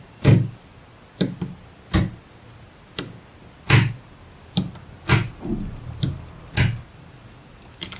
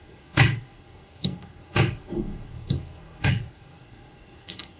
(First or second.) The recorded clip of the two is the first